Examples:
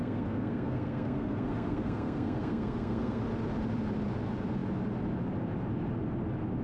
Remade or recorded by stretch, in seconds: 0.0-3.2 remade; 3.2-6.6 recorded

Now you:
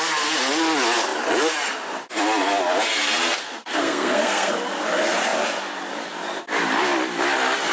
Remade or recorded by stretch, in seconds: 0.0-3.4 recorded; 3.4-4.5 remade; 4.5-7.7 recorded

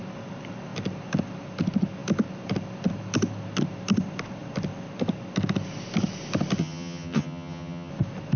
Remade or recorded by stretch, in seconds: 0.0-6.6 recorded; 6.6-7.9 remade; 7.9-8.4 recorded

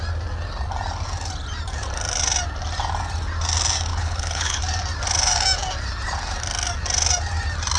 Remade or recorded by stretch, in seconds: 0.0-3.9 recorded; 3.9-4.6 remade; 4.6-7.8 recorded

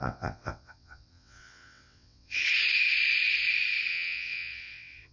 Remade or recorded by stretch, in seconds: 0.0-2.4 remade; 2.4-3.9 recorded; 3.9-5.1 remade